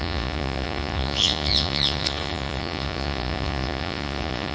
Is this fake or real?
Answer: fake